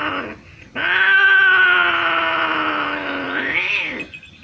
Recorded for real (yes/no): yes